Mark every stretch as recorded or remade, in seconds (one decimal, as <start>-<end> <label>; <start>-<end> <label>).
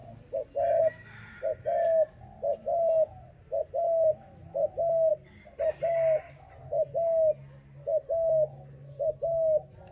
0.0-9.9 recorded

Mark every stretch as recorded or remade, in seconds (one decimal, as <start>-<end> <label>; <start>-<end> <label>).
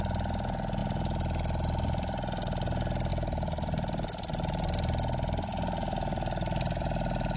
0.0-7.4 recorded